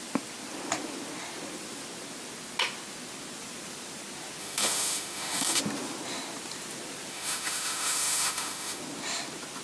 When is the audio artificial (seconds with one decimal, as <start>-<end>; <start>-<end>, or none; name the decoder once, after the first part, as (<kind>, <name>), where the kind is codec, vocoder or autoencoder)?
4.4-5.6 (autoencoder, DAC-VAE); 7.1-8.8